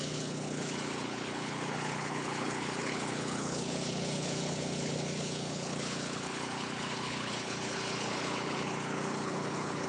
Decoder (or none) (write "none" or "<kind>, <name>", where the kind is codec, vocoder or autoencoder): codec, HILCodec